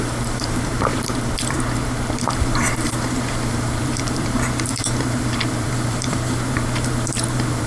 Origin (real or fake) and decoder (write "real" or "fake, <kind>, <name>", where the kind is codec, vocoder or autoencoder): fake, vocoder, BigVGAN v2